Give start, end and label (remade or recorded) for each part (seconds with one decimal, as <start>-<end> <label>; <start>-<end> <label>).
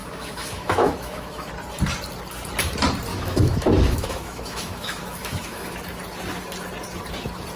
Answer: 0.0-1.5 remade; 1.5-3.1 recorded; 3.1-5.7 remade; 5.7-7.6 recorded